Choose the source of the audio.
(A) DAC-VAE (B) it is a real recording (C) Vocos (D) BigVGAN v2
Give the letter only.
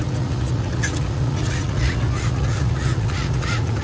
C